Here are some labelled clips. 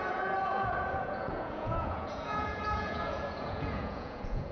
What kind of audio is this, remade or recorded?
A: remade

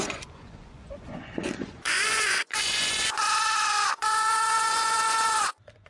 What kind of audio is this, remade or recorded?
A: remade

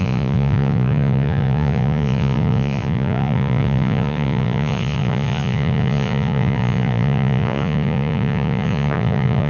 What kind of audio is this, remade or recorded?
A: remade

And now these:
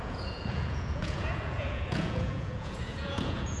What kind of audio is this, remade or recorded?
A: remade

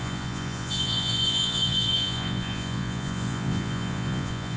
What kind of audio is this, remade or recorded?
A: remade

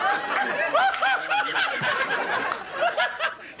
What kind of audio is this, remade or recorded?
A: recorded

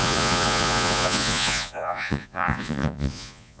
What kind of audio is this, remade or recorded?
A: remade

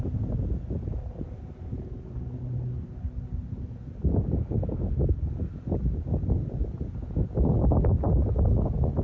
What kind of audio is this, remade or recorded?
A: recorded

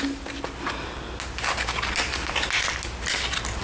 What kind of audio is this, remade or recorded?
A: recorded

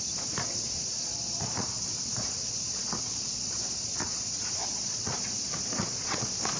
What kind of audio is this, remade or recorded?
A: remade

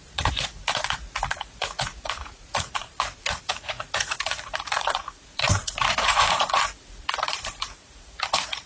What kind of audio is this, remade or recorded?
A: remade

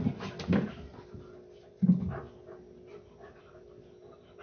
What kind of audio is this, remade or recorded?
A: recorded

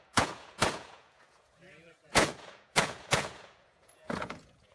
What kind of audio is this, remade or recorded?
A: remade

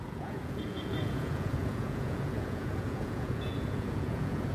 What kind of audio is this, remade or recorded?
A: remade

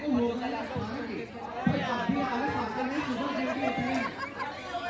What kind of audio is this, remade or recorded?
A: recorded